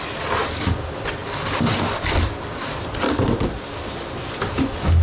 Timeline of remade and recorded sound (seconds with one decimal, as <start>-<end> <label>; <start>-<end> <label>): 0.0-5.0 recorded